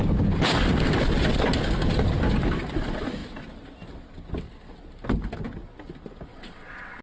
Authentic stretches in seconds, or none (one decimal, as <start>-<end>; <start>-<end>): 0.0-6.3